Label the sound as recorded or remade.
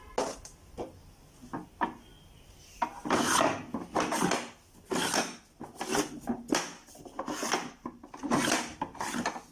recorded